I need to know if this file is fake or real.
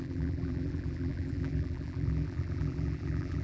fake